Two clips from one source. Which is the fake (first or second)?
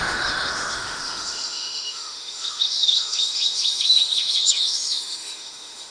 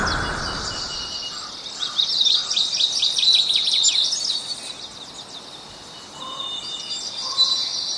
first